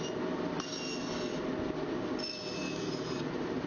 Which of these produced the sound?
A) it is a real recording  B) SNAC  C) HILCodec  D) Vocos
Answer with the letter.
A